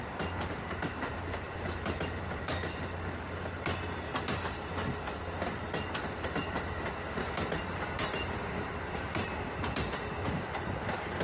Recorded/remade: recorded